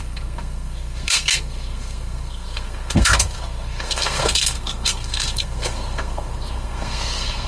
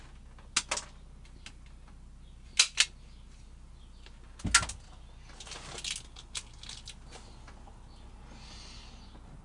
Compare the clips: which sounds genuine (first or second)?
second